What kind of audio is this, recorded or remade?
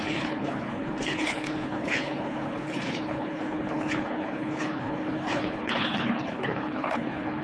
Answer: remade